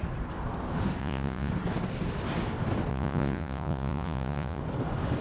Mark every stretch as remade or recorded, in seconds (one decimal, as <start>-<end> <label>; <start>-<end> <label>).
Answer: 0.0-1.0 recorded; 1.0-1.5 remade; 1.5-2.9 recorded; 2.9-4.6 remade; 4.6-5.2 recorded